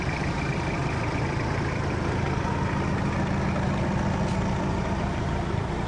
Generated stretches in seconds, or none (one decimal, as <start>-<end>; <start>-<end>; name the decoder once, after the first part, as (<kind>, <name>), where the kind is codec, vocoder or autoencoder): 0.0-0.8 (vocoder, BigVGAN v2); 4.3-5.9